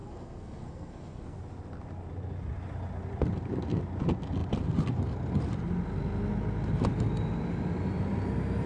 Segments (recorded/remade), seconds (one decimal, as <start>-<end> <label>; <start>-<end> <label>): 0.0-1.4 remade; 1.4-8.7 recorded